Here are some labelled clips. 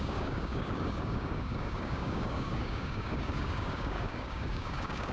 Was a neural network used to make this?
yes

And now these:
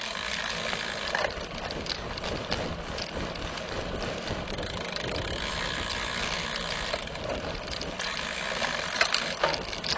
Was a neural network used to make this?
no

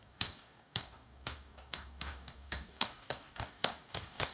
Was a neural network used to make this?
yes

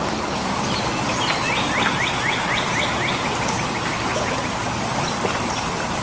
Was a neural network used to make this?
no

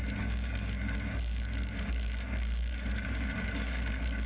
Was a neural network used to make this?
yes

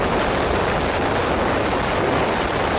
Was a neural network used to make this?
no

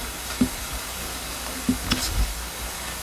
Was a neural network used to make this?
yes